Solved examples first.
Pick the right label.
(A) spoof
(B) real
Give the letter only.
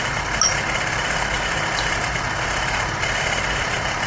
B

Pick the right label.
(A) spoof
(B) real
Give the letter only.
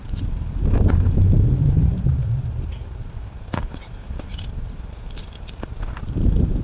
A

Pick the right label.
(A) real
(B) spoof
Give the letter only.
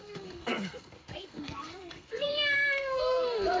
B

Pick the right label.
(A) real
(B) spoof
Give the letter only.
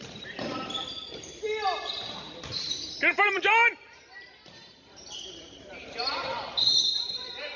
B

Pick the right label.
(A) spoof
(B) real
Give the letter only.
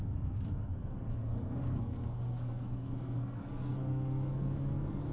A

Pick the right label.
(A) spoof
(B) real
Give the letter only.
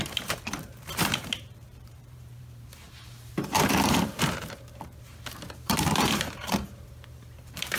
A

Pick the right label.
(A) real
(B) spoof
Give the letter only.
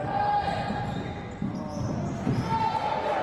A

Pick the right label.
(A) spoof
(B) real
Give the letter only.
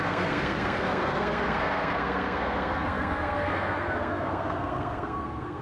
A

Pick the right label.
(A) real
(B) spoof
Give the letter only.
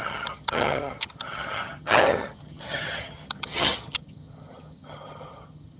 B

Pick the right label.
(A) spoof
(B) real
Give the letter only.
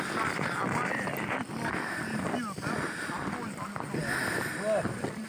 B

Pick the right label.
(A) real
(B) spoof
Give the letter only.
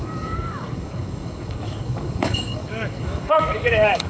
B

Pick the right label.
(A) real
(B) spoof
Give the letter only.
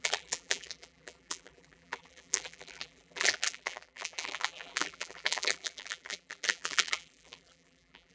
B